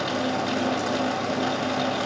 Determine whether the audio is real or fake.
real